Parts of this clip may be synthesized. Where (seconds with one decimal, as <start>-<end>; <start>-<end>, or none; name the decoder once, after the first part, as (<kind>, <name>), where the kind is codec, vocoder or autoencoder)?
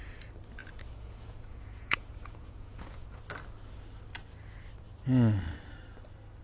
0.6-3.2 (vocoder, Vocos)